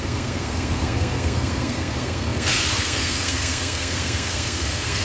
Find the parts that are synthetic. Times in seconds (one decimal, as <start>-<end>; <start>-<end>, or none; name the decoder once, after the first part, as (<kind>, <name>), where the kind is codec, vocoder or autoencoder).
0.0-5.0 (codec, SNAC)